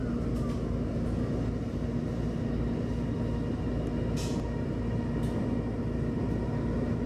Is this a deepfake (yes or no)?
no